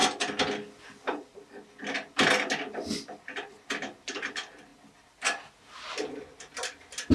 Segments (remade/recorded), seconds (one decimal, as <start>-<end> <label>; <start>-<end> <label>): 0.0-7.1 recorded